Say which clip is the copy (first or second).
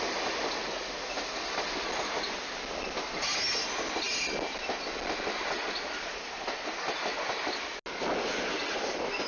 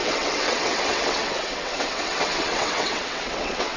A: second